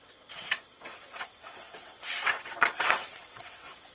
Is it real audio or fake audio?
fake